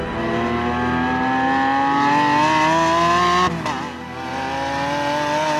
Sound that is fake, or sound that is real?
real